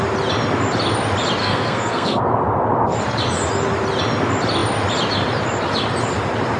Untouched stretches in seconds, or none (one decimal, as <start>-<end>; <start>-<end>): 0.0-1.4; 2.2-6.6

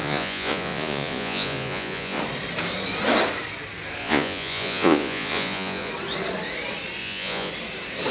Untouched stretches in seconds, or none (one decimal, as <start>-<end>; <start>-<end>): 2.2-4.0; 5.9-7.0; 7.5-8.1

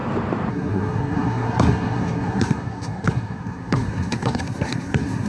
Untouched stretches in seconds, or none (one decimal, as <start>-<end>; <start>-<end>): 0.0-0.5

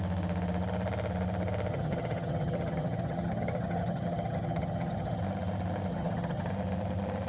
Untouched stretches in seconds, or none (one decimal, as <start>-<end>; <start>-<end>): 0.0-1.7; 5.2-5.9; 6.5-7.3

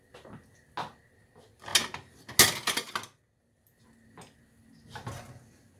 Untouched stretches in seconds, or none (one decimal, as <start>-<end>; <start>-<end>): 0.0-5.8